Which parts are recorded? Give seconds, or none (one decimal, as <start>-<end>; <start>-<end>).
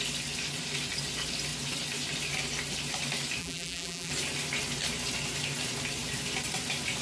0.0-3.4; 4.1-7.0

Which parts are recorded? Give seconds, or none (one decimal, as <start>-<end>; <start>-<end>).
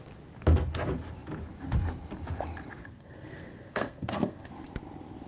0.0-2.8; 4.5-5.3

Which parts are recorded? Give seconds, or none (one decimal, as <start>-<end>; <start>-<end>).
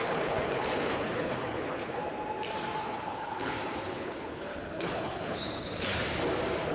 2.0-2.8; 5.9-6.7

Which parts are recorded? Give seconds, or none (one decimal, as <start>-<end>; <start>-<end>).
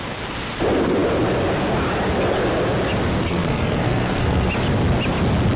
0.0-3.2; 4.5-5.6